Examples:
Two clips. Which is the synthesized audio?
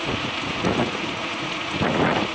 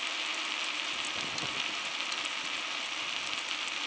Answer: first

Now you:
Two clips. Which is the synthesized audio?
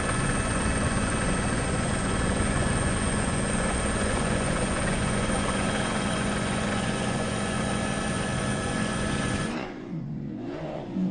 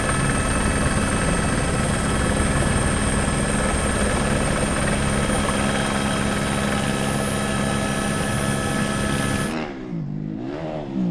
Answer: first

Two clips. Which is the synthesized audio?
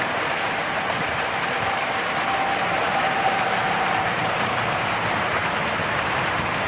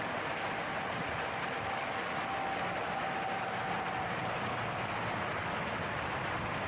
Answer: first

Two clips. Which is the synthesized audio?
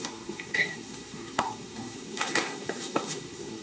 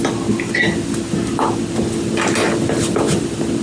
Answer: first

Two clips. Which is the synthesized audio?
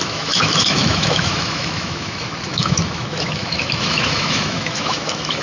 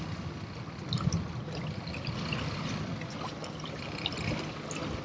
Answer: first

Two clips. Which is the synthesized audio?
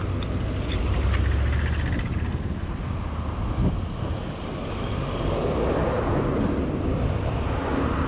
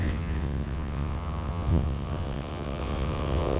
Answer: second